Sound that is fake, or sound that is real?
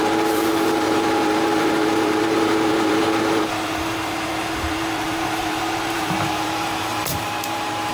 fake